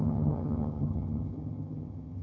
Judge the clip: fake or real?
fake